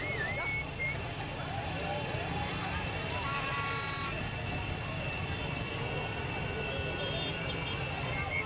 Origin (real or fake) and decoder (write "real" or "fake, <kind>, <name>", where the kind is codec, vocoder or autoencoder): real